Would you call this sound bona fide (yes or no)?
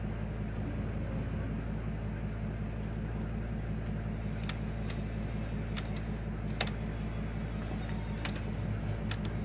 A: yes